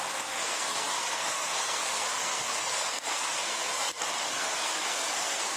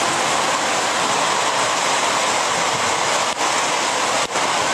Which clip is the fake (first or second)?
first